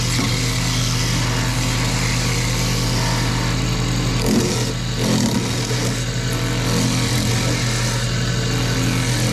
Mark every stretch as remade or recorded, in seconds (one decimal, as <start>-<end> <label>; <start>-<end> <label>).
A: 0.0-9.3 recorded